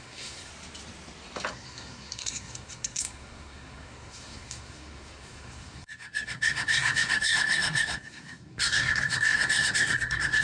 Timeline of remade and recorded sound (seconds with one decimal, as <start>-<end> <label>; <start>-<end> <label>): 0.0-0.5 remade; 0.5-1.5 recorded; 1.5-10.4 remade